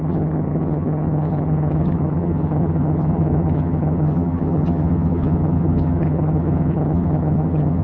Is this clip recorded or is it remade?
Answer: remade